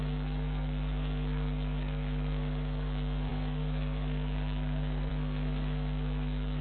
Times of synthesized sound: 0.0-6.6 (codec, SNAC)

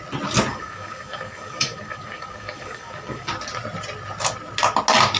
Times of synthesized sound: 0.5-3.3 (codec, DAC)

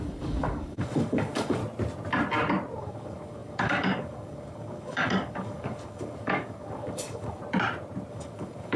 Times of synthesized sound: 0.0-1.6 (codec, DAC); 2.8-7.4; 8.1-8.8

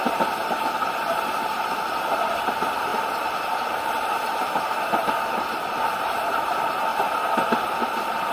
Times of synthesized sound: 0.4-2.2 (vocoder, BigVGAN v2); 2.9-6.5

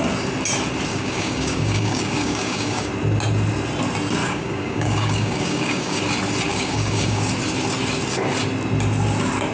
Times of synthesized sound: 0.9-2.9 (codec, DAC); 4.2-6.0; 6.5-7.3

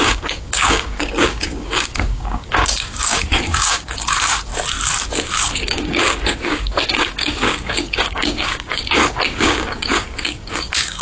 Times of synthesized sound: 0.0-4.5 (codec, DAC); 5.1-11.0